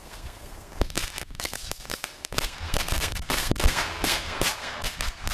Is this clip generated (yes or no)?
yes